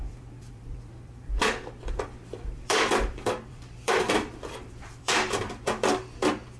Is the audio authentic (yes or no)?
no